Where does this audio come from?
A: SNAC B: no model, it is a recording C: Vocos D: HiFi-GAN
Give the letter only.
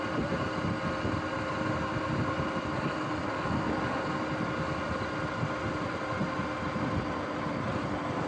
B